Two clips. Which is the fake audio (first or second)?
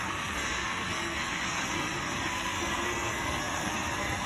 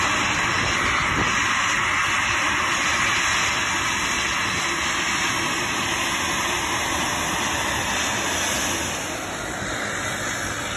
first